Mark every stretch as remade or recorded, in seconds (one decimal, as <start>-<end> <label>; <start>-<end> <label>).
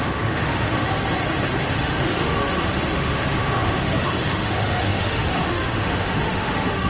0.0-0.9 remade; 0.9-1.6 recorded; 1.6-6.9 remade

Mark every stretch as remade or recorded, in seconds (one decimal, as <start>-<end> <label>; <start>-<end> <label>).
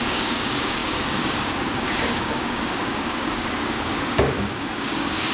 0.0-5.3 remade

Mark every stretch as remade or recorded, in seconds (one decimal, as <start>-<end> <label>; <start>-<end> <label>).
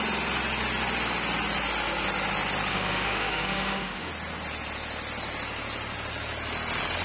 0.0-2.7 recorded; 2.7-4.1 remade; 4.1-7.0 recorded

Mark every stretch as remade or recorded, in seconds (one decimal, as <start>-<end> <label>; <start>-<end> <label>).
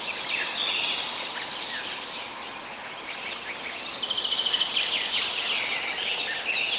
0.0-6.8 recorded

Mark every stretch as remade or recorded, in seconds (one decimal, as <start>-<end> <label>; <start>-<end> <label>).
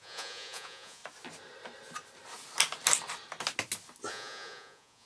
0.0-1.0 remade; 1.0-4.1 recorded; 4.1-5.1 remade